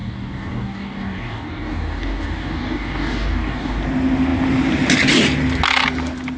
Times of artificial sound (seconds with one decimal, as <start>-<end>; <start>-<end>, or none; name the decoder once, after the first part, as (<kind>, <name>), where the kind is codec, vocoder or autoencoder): 0.0-3.8 (codec, DAC)